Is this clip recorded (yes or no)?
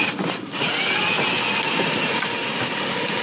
yes